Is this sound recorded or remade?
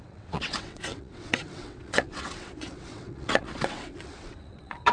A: remade